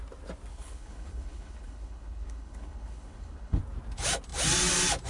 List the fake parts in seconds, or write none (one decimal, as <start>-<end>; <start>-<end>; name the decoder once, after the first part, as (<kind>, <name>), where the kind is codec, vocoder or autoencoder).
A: 0.5-3.6 (codec, HILCodec)